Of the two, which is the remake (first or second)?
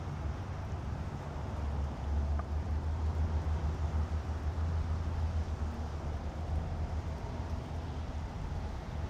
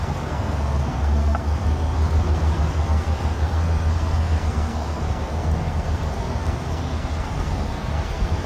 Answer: second